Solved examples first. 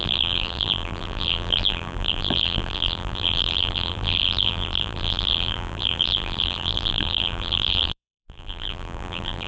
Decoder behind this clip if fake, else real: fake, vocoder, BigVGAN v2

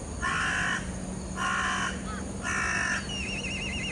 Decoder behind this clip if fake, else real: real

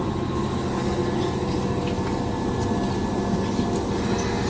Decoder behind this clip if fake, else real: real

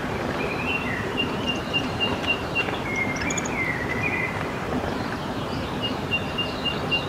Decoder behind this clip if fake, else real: fake, vocoder, BigVGAN v2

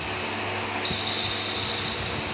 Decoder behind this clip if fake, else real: real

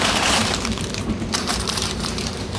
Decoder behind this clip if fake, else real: fake, vocoder, BigVGAN v2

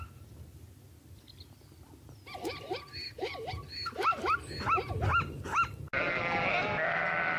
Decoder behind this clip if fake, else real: real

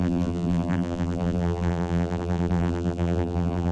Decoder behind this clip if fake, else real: fake, vocoder, BigVGAN v2